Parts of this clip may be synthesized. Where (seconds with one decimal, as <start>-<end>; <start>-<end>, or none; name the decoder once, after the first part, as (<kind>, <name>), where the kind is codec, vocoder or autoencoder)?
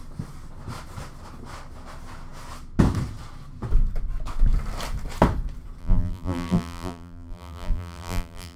5.8-8.6 (vocoder, BigVGAN v2)